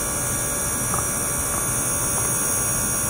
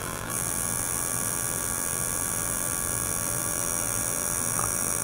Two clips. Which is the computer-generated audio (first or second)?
second